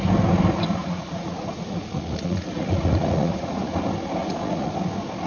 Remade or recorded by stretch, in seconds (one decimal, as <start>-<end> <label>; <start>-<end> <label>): 0.0-0.8 recorded; 0.8-3.8 remade; 3.8-4.2 recorded; 4.2-4.7 remade; 4.7-5.3 recorded